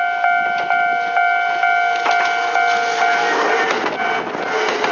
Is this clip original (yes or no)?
yes